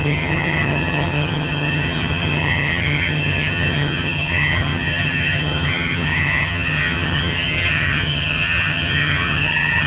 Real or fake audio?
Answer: fake